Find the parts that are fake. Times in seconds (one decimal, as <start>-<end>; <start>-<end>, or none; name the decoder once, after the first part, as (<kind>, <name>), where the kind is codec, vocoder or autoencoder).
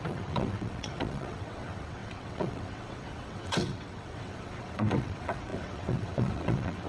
0.0-6.9 (vocoder, WaveNeXt)